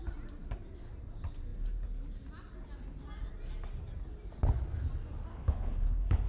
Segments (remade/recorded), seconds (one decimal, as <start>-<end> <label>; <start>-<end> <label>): 0.0-5.3 recorded; 5.3-6.3 remade